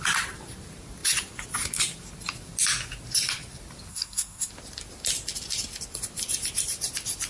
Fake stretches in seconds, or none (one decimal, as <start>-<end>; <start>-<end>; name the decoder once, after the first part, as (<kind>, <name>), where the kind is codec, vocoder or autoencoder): 3.9-4.5 (codec, SNAC)